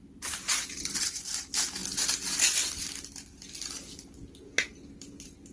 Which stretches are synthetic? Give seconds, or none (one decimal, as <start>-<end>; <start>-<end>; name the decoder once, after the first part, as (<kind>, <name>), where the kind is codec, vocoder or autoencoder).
0.0-1.8 (vocoder, BigVGAN v2); 3.6-5.5